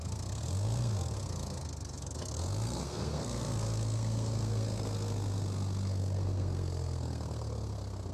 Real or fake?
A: fake